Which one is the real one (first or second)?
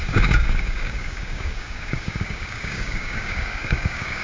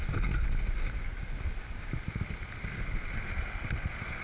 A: second